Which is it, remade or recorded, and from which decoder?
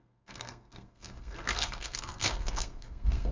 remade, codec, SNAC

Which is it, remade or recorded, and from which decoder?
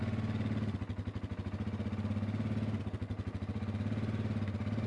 recorded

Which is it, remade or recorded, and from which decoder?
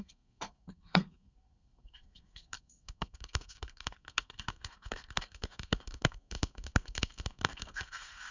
remade, codec, SNAC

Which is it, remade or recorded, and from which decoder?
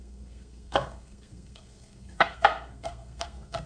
remade, codec, SNAC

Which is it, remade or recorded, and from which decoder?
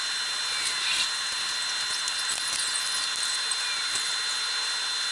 recorded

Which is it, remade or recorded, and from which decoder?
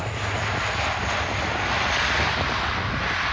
recorded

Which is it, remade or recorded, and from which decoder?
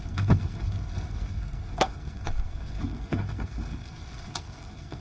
remade, codec, SNAC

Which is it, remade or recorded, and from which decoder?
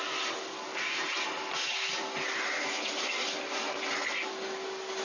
recorded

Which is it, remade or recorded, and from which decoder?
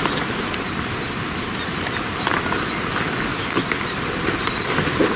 recorded